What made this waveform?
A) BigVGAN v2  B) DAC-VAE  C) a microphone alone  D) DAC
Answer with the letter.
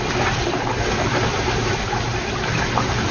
A